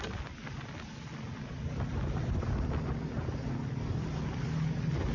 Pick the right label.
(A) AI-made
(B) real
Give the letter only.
B